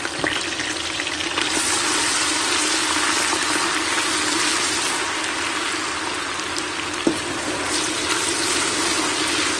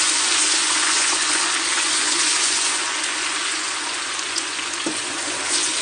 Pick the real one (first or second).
first